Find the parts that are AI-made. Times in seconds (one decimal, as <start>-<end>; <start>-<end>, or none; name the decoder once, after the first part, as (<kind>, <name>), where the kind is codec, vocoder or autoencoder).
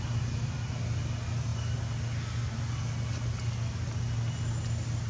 none